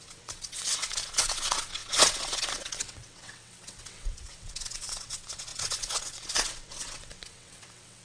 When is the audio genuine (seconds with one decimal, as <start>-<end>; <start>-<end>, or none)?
none